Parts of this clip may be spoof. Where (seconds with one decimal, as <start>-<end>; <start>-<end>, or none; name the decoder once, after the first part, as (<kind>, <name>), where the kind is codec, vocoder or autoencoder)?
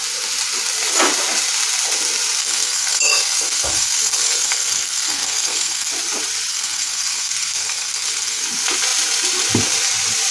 2.4-5.9 (codec, SNAC); 6.5-8.4